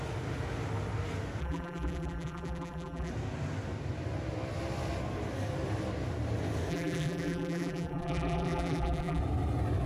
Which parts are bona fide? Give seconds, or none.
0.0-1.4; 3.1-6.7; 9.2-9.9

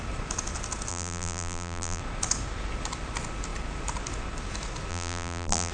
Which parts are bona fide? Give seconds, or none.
0.0-0.9; 2.0-4.9